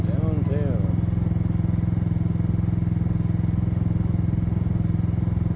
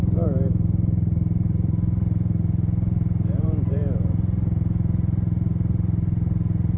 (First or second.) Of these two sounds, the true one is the first